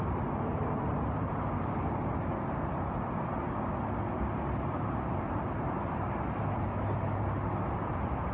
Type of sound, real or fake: real